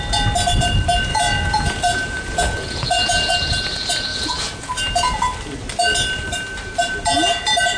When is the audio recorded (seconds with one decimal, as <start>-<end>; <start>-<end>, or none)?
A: 0.0-1.1; 3.3-4.1; 4.7-7.8